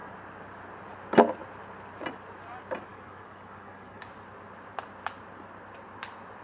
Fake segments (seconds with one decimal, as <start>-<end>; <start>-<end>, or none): 2.9-4.1